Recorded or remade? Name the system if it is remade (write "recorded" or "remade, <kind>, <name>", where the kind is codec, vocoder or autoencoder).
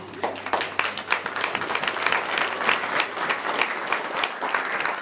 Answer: recorded